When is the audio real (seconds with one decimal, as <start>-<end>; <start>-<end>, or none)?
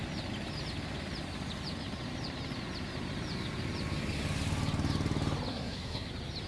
0.0-5.5; 6.1-6.5